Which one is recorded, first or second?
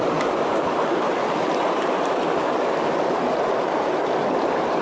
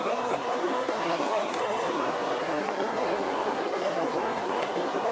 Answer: first